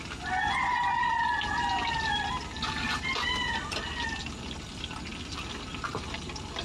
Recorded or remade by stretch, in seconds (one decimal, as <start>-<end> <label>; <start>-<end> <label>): 0.0-6.6 recorded